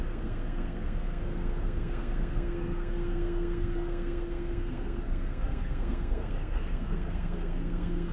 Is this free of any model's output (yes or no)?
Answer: no